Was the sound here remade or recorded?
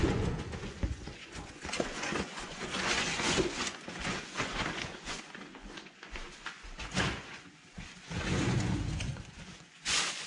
remade